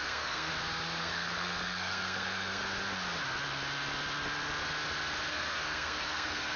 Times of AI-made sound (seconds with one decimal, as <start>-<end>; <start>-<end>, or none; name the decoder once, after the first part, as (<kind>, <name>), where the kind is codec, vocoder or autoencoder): 0.0-0.5 (codec, SNAC); 1.0-2.6; 5.3-6.6